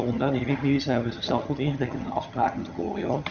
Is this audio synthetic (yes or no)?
yes